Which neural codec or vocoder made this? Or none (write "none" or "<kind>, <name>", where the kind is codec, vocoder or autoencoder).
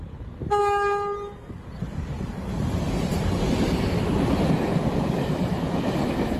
none